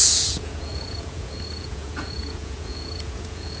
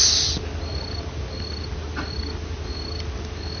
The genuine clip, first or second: second